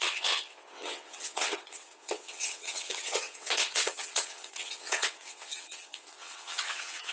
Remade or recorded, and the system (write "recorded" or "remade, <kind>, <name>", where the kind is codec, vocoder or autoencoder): remade, vocoder, WaveNeXt